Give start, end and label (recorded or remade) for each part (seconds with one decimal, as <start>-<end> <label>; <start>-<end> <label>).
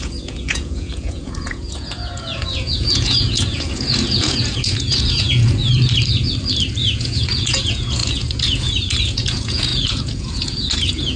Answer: 0.0-5.6 remade; 5.6-7.0 recorded; 7.0-11.2 remade